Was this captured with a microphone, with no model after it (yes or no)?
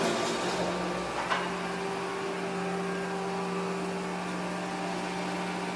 yes